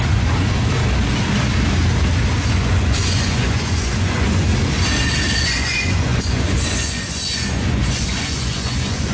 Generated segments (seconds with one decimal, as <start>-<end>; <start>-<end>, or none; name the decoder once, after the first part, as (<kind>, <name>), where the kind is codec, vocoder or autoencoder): 0.0-0.4 (vocoder, Vocos); 2.5-4.5; 5.4-9.1